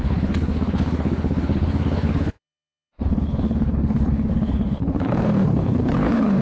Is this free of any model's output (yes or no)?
no